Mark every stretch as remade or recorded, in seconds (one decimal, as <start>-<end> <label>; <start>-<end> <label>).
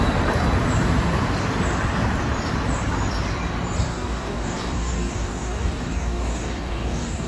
0.0-3.9 recorded; 3.9-7.3 remade